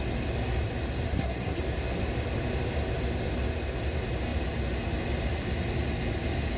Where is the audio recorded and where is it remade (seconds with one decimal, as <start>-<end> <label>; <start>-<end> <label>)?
0.0-1.1 recorded; 1.1-1.6 remade; 1.6-6.6 recorded